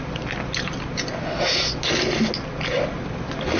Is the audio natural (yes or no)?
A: yes